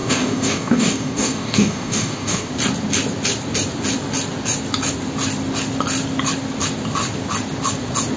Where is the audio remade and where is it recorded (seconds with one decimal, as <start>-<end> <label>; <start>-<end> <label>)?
0.0-2.5 remade; 2.5-8.2 recorded